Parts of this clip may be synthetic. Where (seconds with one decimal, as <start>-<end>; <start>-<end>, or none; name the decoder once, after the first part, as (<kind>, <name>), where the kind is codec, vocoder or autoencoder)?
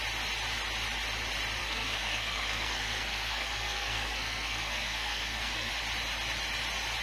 1.6-5.7 (codec, SNAC)